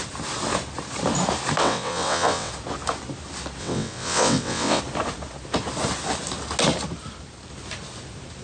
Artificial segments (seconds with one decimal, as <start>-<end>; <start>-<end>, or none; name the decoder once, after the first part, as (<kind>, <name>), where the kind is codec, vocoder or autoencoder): 1.6-2.5 (vocoder, WaveNeXt); 3.6-4.8